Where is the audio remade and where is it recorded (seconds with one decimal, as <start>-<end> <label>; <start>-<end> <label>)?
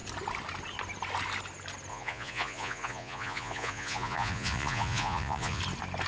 0.0-1.9 recorded; 1.9-5.6 remade; 5.6-6.1 recorded